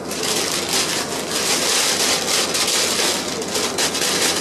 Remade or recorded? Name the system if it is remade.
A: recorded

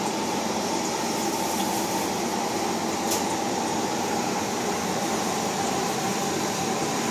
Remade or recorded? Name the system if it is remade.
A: recorded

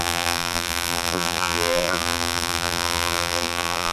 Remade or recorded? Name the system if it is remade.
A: remade, vocoder, BigVGAN v2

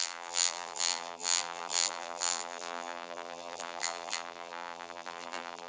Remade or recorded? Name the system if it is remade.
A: remade, vocoder, BigVGAN v2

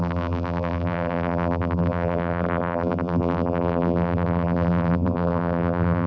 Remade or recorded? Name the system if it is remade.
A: remade, vocoder, BigVGAN v2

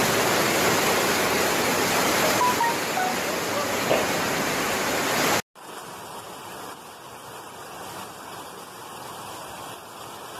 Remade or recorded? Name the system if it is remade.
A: recorded